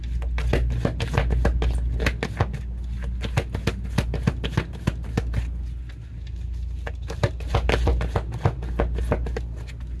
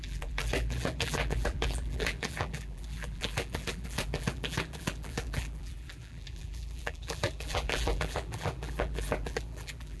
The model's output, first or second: second